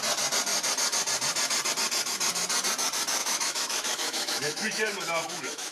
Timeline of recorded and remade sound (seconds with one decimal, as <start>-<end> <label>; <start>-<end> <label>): 0.0-3.2 recorded; 3.2-5.7 remade